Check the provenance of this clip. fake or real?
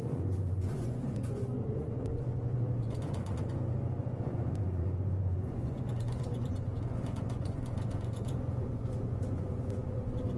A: fake